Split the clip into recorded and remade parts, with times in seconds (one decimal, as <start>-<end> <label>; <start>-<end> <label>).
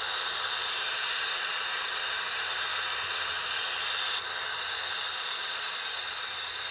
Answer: 0.0-2.7 remade; 2.7-5.1 recorded; 5.1-6.7 remade